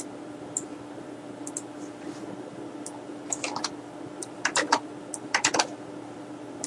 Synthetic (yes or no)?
no